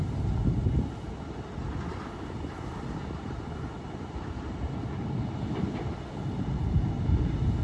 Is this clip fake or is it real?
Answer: real